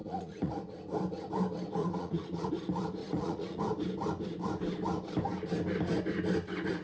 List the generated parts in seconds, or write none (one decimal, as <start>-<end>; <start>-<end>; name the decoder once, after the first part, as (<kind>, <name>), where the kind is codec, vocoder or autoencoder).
0.0-0.6 (vocoder, Vocos); 1.8-2.5; 3.0-3.6